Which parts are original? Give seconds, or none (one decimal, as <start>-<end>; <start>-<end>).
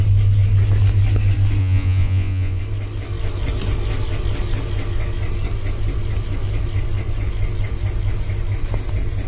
0.0-1.6; 2.6-9.3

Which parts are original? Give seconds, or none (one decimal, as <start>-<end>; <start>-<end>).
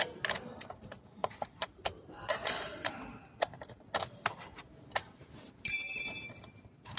0.0-1.2; 2.9-5.2; 6.0-7.0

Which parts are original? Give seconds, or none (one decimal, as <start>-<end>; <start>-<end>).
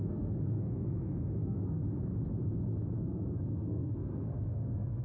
1.8-3.0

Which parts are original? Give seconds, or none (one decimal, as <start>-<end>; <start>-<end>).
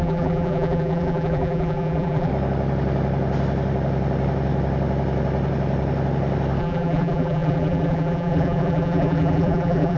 2.3-6.6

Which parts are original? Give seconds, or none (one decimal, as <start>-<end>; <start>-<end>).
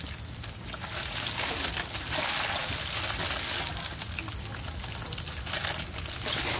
0.0-6.6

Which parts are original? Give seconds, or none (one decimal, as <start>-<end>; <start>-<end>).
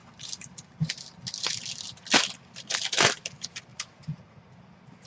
0.0-3.7; 4.5-5.1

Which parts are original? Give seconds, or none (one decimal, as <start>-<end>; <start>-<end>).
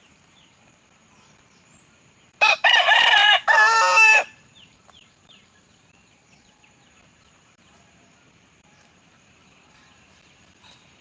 none